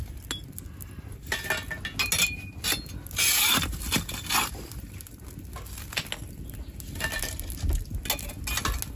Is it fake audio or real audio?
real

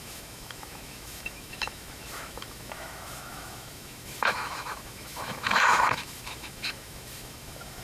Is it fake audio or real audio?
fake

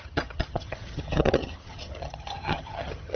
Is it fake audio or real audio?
fake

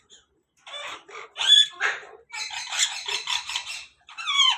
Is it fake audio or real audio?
fake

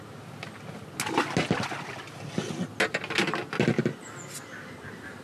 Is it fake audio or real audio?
real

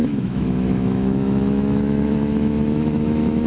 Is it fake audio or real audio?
fake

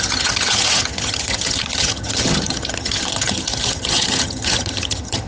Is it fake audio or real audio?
fake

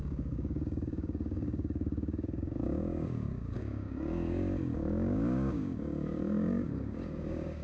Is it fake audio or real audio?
fake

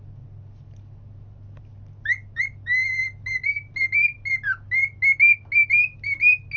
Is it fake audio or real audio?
real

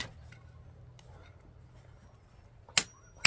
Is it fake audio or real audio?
real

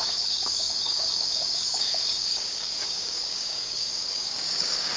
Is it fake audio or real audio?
fake